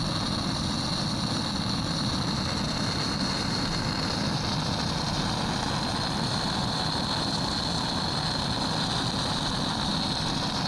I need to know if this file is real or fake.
real